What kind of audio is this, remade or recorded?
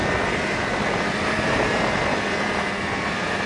remade